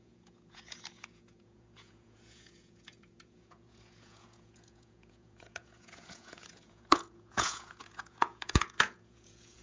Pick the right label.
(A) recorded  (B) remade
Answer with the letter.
B